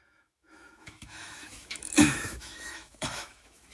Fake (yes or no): yes